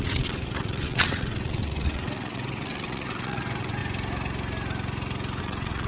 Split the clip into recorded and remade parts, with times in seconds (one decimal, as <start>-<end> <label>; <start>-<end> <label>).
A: 0.0-3.8 remade; 3.8-5.4 recorded; 5.4-5.9 remade